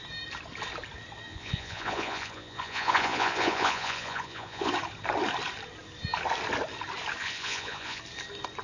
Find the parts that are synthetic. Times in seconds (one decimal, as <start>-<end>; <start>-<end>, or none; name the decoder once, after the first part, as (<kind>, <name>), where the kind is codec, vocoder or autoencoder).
1.3-4.7 (vocoder, Vocos); 7.2-8.0